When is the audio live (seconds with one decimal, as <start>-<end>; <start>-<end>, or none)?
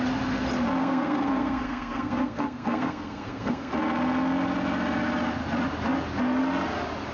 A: 0.0-0.8; 3.8-7.1